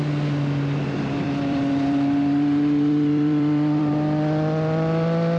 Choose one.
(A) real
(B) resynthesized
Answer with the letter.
B